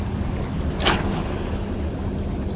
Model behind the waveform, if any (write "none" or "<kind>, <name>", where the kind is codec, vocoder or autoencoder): none